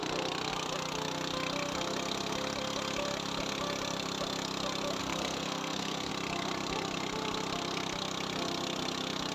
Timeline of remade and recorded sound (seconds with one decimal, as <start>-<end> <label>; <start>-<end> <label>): 0.0-5.0 recorded; 5.0-6.1 remade; 6.1-9.3 recorded